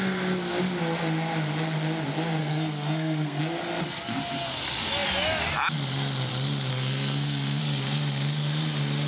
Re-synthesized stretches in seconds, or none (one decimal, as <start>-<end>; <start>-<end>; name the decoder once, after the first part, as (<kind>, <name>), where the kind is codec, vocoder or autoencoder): 2.4-3.4 (codec, SNAC); 6.7-7.6